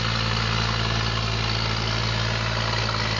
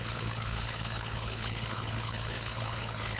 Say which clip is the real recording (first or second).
first